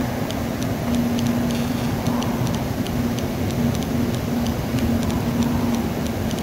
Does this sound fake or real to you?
real